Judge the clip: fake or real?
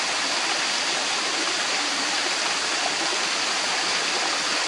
real